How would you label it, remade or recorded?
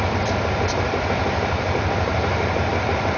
remade